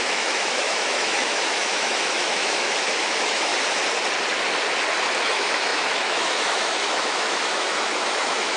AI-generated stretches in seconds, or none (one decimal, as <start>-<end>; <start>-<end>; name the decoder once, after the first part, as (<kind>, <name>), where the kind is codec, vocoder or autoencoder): 0.0-3.5 (autoencoder, DAC-VAE); 5.2-8.6